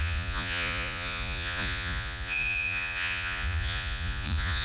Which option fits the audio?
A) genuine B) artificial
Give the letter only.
B